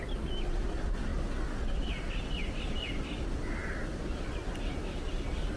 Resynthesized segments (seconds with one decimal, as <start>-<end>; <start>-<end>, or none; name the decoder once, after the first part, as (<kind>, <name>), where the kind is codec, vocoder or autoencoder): none